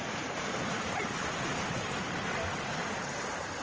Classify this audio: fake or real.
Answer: real